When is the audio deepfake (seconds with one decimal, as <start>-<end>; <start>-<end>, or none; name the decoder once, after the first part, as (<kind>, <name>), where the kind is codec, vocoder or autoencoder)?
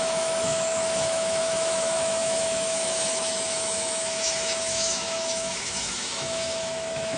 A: 0.0-7.2 (autoencoder, DAC-VAE)